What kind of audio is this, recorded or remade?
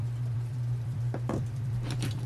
remade